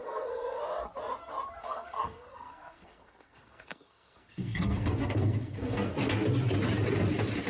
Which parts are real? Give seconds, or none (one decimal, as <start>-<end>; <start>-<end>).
0.6-1.6; 5.9-7.5